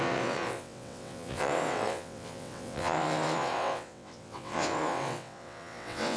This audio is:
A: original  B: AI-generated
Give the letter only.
B